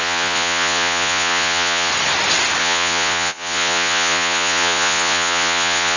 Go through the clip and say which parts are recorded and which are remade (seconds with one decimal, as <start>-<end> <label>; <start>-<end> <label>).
0.0-1.9 remade; 1.9-2.6 recorded; 2.6-6.0 remade